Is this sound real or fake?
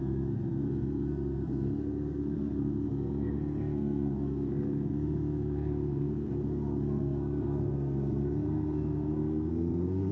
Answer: fake